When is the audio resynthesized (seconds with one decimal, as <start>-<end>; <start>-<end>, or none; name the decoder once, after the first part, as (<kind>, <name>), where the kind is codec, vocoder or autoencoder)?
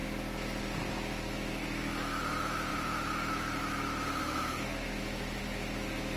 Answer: 0.9-6.2 (autoencoder, DAC-VAE)